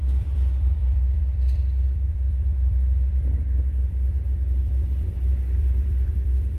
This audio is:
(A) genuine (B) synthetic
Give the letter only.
B